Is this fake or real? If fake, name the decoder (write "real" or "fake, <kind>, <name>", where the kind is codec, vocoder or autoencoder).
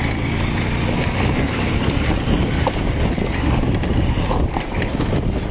real